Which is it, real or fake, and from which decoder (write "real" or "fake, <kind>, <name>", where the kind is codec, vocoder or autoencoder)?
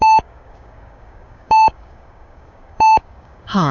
fake, codec, DAC